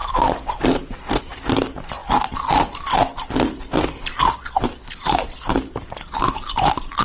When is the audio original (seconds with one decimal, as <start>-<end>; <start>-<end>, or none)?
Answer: 0.0-1.2; 2.0-6.0